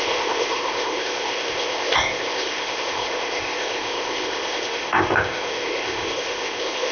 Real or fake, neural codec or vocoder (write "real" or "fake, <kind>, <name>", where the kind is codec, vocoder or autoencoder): fake, codec, ZipCodec